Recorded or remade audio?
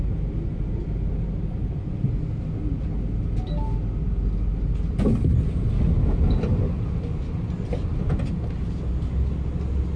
recorded